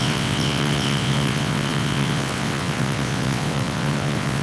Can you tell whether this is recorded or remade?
remade